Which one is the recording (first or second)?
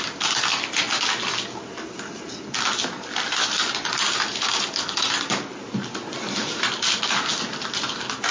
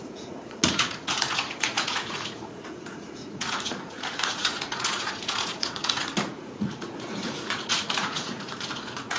first